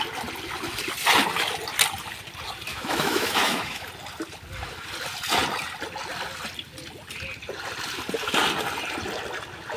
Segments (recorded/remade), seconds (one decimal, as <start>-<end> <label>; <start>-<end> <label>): 0.0-2.7 recorded; 2.7-3.9 remade; 3.9-9.8 recorded